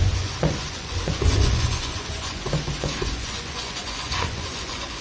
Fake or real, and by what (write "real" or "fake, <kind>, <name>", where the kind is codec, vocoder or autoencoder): fake, vocoder, Vocos